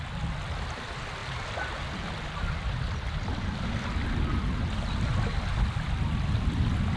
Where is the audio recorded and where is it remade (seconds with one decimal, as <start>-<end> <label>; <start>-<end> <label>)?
0.0-7.0 recorded